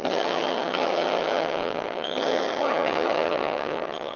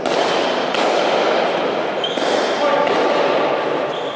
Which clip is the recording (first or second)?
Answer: second